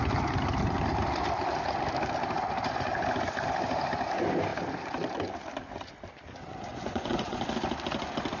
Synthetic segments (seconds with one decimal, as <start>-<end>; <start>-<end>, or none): 6.7-7.4